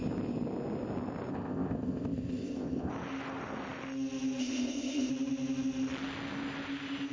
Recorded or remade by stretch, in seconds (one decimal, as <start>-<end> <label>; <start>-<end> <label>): 0.0-1.3 recorded; 1.3-2.9 remade; 2.9-4.4 recorded; 4.4-5.1 remade; 5.1-7.1 recorded